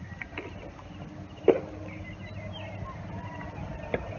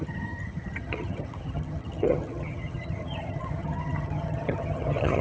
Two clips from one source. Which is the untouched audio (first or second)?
first